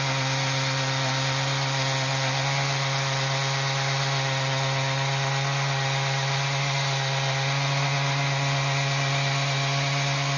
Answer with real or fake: real